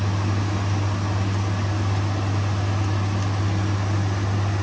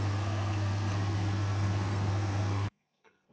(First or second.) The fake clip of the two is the second